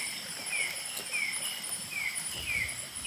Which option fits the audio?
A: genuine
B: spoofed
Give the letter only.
A